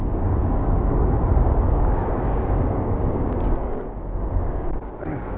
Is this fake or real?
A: fake